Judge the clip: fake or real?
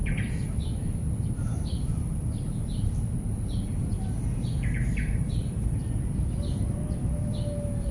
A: real